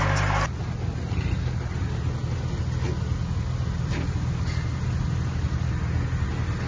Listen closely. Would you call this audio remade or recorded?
recorded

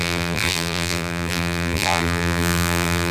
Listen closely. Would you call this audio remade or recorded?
remade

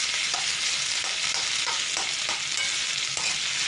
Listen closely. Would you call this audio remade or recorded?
recorded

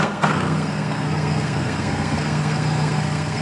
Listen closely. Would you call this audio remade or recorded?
remade